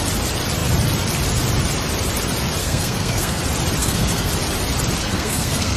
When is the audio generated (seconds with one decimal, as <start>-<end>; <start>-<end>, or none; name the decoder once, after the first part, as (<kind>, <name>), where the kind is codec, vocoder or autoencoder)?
2.6-3.4 (codec, SNAC); 3.8-4.3; 5.0-5.8